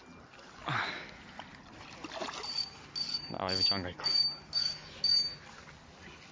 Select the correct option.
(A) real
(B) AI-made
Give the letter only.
A